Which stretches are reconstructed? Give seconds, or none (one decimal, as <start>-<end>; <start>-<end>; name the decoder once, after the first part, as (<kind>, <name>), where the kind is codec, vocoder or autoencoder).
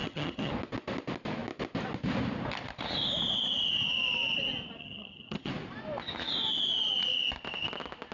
0.0-0.5 (vocoder, HiFi-GAN); 4.8-5.5